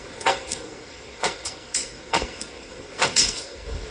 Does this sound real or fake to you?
fake